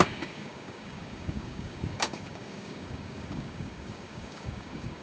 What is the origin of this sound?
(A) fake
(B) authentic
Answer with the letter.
A